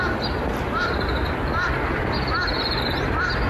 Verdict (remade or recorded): remade